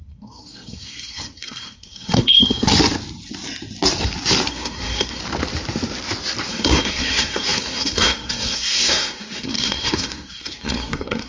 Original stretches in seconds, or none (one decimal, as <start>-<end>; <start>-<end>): 2.4-4.5; 5.2-6.5